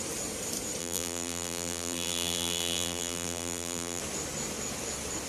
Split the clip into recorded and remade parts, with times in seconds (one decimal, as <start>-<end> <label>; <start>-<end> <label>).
0.0-0.8 recorded; 0.8-4.0 remade; 4.0-5.3 recorded